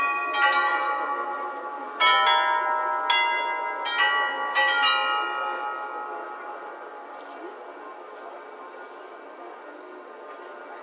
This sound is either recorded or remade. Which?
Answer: recorded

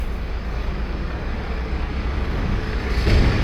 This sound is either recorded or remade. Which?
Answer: remade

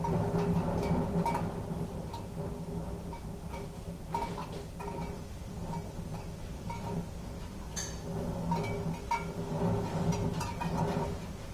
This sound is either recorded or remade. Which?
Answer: recorded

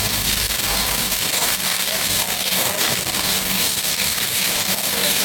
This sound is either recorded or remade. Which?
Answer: remade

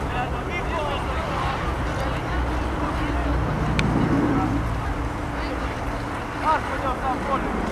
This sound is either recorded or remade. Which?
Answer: recorded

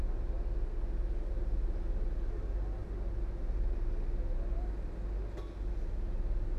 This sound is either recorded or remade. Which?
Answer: recorded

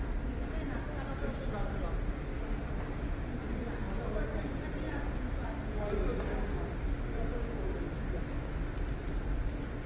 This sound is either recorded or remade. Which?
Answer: recorded